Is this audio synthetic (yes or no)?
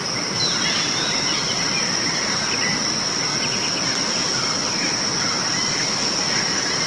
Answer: no